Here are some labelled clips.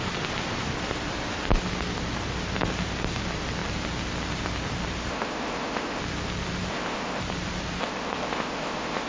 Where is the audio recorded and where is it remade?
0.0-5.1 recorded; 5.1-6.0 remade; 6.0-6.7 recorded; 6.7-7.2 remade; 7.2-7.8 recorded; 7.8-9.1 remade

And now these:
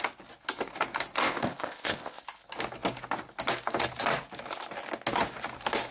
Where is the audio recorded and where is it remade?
0.0-1.2 recorded; 1.2-2.2 remade; 2.2-5.9 recorded

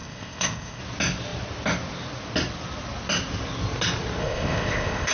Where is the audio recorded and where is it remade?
0.0-0.8 remade; 0.8-4.2 recorded; 4.2-5.1 remade

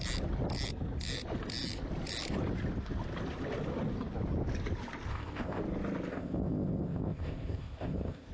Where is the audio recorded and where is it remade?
0.0-5.1 recorded; 5.1-5.6 remade; 5.6-6.1 recorded; 6.1-8.3 remade

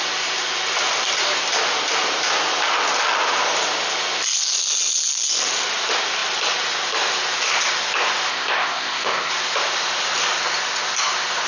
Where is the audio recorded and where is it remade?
0.0-8.3 recorded; 8.3-9.3 remade; 9.3-11.5 recorded